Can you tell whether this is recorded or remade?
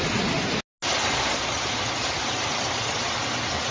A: recorded